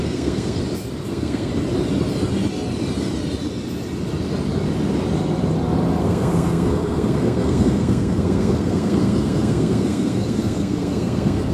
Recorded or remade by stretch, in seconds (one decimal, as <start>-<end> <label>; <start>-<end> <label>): 0.0-0.6 remade; 0.6-1.1 recorded; 1.1-1.5 remade; 1.5-6.0 recorded; 6.0-11.5 remade